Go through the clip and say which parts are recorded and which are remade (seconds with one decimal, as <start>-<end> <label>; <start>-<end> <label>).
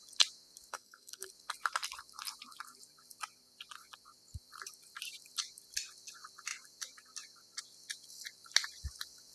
0.0-0.7 recorded; 0.7-1.3 remade; 1.3-9.3 recorded